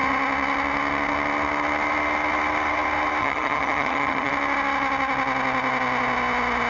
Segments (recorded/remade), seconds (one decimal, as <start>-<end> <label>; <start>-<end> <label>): 0.0-3.2 recorded; 3.2-4.3 remade; 4.3-6.7 recorded